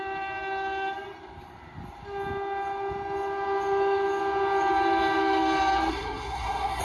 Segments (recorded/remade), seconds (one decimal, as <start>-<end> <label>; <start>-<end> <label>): 0.0-5.9 recorded; 5.9-6.8 remade